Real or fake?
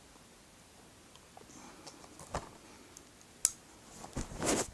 real